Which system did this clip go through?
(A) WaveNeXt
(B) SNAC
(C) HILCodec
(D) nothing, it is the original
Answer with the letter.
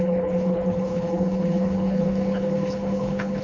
C